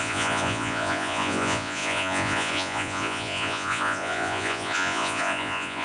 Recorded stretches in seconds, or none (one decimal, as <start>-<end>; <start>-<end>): none